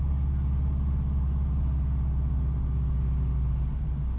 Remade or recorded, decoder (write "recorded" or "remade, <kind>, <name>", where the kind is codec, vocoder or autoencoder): recorded